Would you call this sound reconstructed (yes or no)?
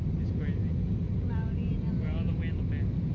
no